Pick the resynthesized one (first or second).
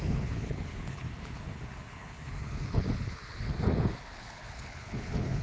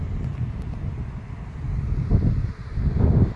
first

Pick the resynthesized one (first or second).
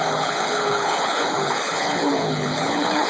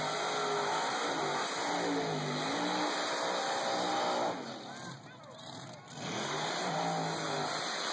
first